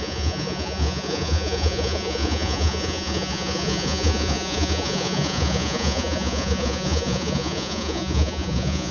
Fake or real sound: fake